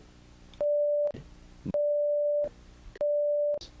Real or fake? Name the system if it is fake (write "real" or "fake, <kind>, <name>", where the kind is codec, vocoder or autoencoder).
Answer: real